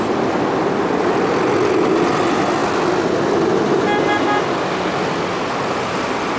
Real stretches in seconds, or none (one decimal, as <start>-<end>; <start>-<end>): 0.0-6.4